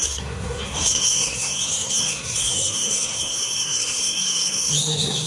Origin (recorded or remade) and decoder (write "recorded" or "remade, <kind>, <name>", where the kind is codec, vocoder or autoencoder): remade, codec, SNAC